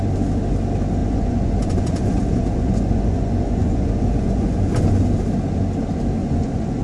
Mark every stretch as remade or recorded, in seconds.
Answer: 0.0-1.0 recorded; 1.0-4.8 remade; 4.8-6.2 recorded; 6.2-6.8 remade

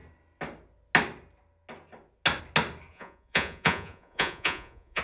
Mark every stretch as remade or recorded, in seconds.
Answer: 0.0-2.9 recorded; 2.9-5.0 remade

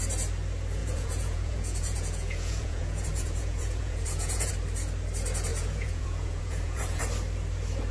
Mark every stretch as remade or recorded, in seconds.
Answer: 0.0-0.8 recorded; 0.8-4.5 remade; 4.5-5.5 recorded; 5.5-7.0 remade; 7.0-7.9 recorded

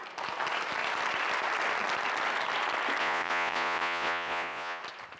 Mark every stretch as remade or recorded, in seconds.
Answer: 0.0-3.0 recorded; 3.0-4.8 remade; 4.8-5.2 recorded

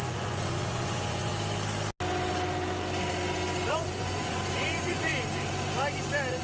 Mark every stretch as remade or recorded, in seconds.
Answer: 0.0-1.3 remade; 1.3-3.7 recorded; 3.7-5.1 remade; 5.1-6.4 recorded

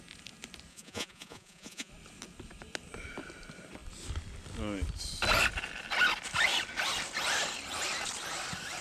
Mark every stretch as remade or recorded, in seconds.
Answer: 0.0-0.7 recorded; 0.7-1.9 remade; 1.9-8.8 recorded